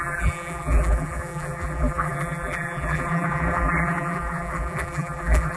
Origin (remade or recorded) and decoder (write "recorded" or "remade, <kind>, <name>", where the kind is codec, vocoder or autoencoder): remade, vocoder, BigVGAN v2